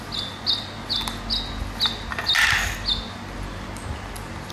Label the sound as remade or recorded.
recorded